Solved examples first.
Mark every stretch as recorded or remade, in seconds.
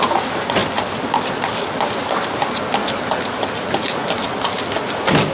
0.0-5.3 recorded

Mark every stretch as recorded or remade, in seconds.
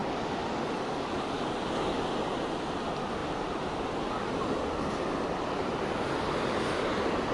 0.0-2.0 remade; 2.0-7.3 recorded